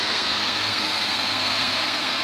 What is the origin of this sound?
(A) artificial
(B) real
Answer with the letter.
A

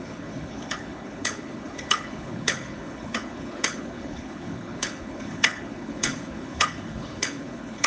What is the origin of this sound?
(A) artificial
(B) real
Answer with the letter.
A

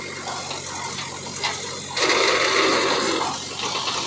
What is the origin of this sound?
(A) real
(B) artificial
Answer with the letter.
A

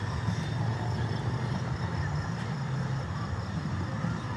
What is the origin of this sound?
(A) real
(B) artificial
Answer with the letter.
B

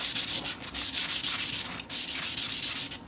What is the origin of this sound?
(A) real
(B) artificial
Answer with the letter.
A